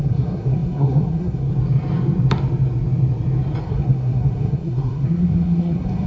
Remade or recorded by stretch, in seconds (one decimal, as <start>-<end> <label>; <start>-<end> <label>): 0.0-1.5 remade; 1.5-3.6 recorded; 3.6-6.1 remade